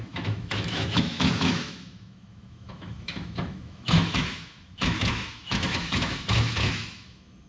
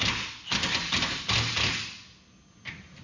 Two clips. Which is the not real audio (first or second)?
first